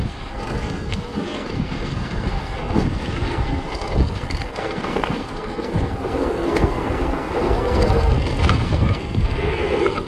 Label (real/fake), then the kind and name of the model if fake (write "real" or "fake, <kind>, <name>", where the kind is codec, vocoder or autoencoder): fake, codec, SNAC